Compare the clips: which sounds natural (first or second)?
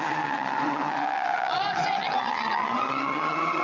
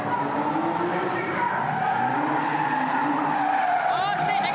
second